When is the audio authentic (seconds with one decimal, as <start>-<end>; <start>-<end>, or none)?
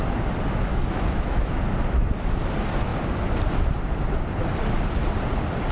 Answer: 0.0-0.7; 1.6-5.7